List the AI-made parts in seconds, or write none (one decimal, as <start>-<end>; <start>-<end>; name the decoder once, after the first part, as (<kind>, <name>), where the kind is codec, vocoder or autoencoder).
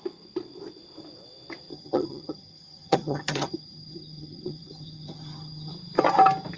1.7-5.7 (vocoder, HiFi-GAN)